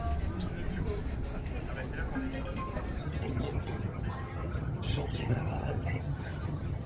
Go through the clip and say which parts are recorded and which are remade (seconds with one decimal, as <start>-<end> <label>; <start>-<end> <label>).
0.0-3.0 recorded; 3.0-6.9 remade

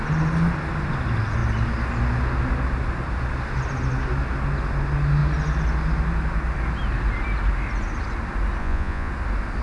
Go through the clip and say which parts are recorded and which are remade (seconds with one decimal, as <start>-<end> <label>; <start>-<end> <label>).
0.0-8.6 recorded; 8.6-9.1 remade; 9.1-9.6 recorded

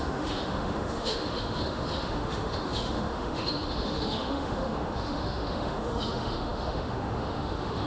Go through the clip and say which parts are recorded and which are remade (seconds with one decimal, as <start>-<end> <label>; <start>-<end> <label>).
0.0-7.9 remade

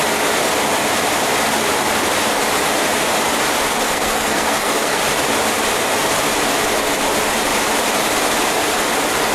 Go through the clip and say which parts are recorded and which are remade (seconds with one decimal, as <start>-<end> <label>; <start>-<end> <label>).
0.0-3.7 recorded; 3.7-5.0 remade; 5.0-9.3 recorded

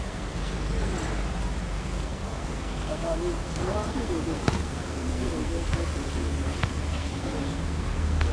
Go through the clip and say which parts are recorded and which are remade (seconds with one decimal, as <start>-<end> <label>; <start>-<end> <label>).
0.0-0.9 remade; 0.9-1.7 recorded; 1.7-8.3 remade

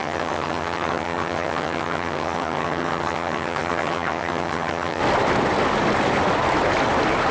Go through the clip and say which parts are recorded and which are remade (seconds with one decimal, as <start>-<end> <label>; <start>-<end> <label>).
0.0-5.0 remade; 5.0-7.3 recorded

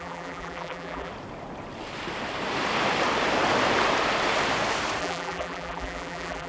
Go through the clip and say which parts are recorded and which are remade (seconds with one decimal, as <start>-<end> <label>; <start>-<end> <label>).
0.0-1.1 remade; 1.1-5.0 recorded; 5.0-6.5 remade

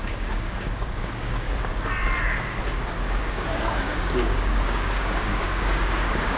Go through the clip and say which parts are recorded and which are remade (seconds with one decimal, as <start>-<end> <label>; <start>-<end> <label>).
0.0-1.7 remade; 1.7-3.2 recorded; 3.2-6.4 remade